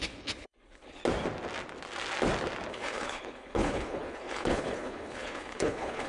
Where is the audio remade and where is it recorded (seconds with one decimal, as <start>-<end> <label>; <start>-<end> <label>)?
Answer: 0.0-1.0 remade; 1.0-2.7 recorded; 2.7-6.1 remade